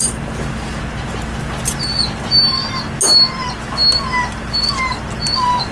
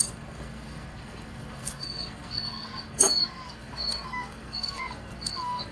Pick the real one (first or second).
first